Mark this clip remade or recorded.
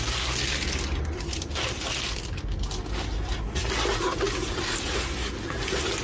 recorded